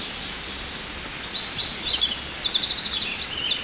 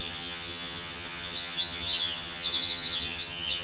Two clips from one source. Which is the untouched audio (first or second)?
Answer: first